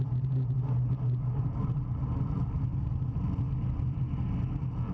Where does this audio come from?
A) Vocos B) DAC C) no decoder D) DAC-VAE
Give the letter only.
C